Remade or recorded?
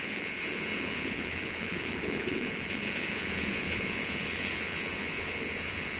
remade